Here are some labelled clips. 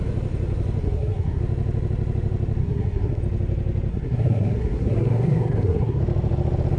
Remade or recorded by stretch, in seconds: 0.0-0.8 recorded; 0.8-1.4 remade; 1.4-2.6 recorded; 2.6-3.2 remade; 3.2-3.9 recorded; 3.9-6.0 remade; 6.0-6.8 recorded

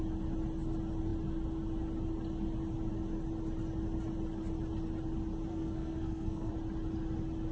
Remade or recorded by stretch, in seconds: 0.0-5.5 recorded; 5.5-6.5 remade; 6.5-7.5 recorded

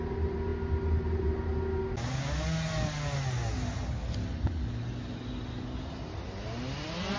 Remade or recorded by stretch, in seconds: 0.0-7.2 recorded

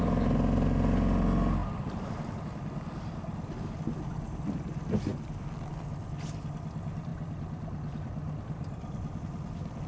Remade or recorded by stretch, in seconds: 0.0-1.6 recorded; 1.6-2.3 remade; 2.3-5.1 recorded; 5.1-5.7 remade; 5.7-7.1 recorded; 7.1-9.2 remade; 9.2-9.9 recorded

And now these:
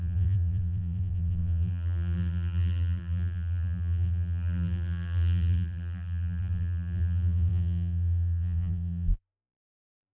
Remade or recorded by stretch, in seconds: 0.0-10.1 remade

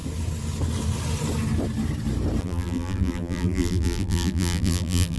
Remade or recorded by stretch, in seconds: 0.0-2.4 recorded; 2.4-5.2 remade

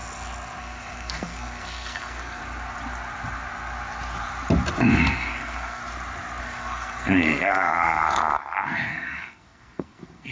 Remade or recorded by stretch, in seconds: 0.0-0.6 recorded; 0.6-2.4 remade; 2.4-4.9 recorded; 4.9-5.8 remade; 5.8-6.4 recorded; 6.4-10.3 remade

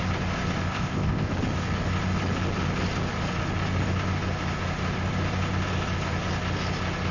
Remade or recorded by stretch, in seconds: 0.0-0.7 recorded; 0.7-1.3 remade; 1.3-7.1 recorded